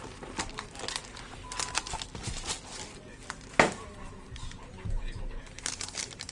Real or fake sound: real